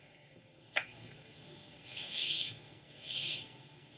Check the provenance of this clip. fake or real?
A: fake